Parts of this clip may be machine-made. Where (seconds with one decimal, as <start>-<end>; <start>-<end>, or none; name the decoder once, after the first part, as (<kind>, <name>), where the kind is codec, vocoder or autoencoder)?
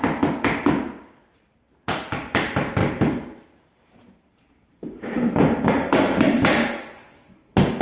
2.8-5.7 (vocoder, BigVGAN v2)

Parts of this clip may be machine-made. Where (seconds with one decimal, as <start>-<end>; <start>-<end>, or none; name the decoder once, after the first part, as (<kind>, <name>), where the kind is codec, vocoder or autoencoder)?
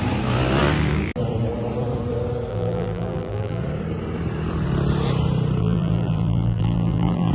2.5-3.6 (vocoder, BigVGAN v2); 5.6-7.3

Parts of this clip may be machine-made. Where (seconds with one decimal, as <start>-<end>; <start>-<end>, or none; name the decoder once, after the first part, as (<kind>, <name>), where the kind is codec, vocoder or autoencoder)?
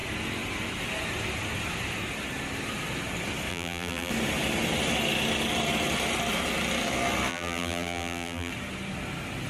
3.5-4.1 (vocoder, BigVGAN v2); 7.3-8.5